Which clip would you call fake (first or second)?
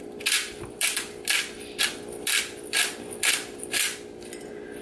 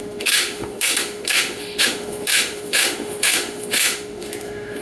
second